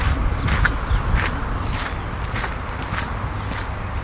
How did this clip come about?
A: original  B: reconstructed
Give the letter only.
A